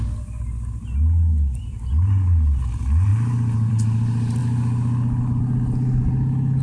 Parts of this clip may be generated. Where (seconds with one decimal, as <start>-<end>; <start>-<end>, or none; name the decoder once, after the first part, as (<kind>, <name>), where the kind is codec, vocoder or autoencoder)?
none